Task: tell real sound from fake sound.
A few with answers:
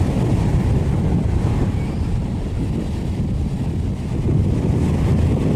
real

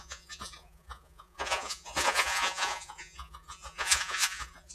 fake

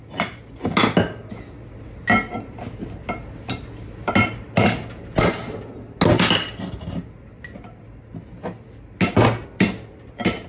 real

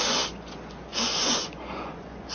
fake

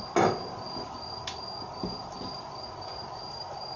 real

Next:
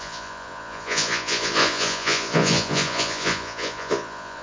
fake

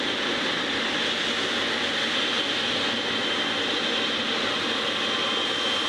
real